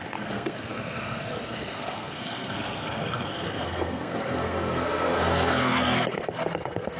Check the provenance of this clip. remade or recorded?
remade